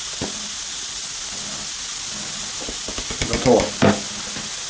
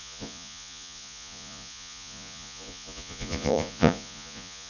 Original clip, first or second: first